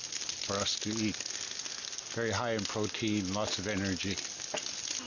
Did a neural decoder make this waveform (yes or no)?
no